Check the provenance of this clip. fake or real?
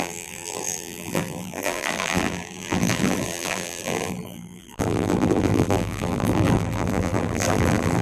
fake